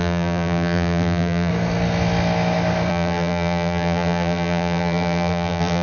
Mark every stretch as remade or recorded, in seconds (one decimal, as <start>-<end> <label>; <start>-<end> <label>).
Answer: 0.0-1.5 remade; 1.5-2.9 recorded; 2.9-5.8 remade